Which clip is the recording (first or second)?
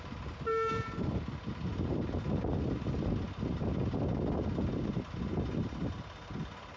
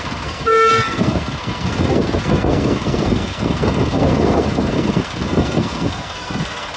first